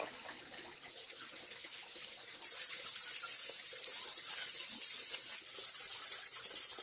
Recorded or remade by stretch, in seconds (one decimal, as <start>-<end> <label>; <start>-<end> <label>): 0.0-6.8 recorded